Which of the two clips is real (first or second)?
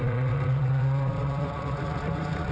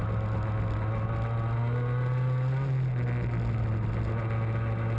second